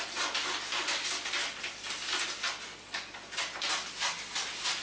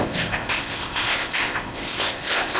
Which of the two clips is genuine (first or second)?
first